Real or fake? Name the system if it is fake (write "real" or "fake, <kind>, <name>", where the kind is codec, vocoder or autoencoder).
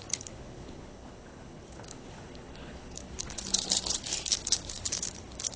fake, codec, HILCodec